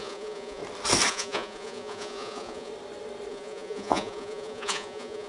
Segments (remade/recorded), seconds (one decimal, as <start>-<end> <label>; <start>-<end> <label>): 0.0-0.6 remade; 0.6-1.1 recorded; 1.1-2.7 remade; 2.7-3.3 recorded; 3.3-5.3 remade